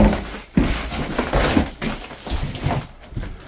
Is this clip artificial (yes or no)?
no